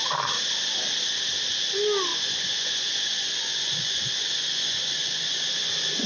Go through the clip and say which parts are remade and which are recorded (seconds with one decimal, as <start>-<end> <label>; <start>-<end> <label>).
0.0-2.1 recorded; 2.1-6.1 remade